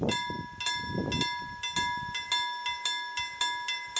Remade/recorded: recorded